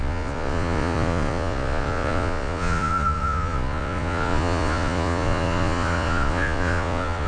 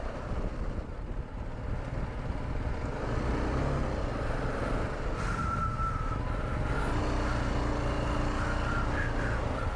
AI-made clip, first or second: first